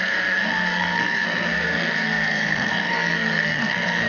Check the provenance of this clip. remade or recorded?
remade